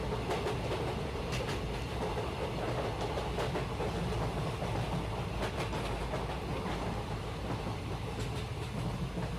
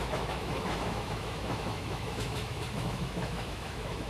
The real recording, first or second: first